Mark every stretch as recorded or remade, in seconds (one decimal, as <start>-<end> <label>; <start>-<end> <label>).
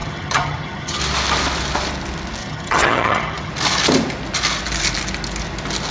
0.0-1.0 remade; 1.0-2.4 recorded; 2.4-3.5 remade; 3.5-5.9 recorded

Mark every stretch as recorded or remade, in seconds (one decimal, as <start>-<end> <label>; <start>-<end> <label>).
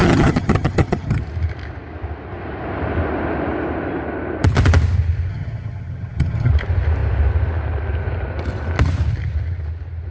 0.0-1.2 remade; 1.2-5.3 recorded; 5.3-6.5 remade; 6.5-10.1 recorded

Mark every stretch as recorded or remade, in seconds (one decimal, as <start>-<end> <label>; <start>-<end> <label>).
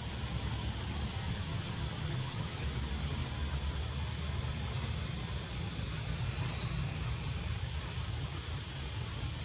0.0-1.1 recorded; 1.1-2.6 remade; 2.6-9.4 recorded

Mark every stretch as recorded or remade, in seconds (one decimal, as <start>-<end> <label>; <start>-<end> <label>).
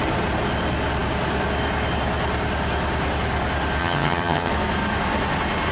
0.0-3.8 recorded; 3.8-4.5 remade; 4.5-5.7 recorded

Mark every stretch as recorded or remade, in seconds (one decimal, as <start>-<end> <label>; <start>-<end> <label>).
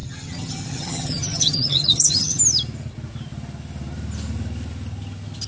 0.0-2.4 remade; 2.4-5.5 recorded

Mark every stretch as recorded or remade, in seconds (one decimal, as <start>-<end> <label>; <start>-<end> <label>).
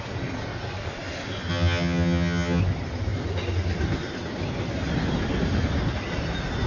0.0-1.5 recorded; 1.5-2.6 remade; 2.6-6.7 recorded